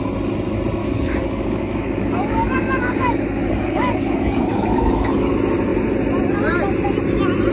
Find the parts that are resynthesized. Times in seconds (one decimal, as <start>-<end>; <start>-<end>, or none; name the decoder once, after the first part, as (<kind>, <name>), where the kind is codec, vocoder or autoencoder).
0.8-5.3 (codec, DAC)